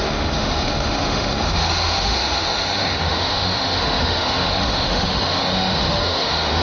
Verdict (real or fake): fake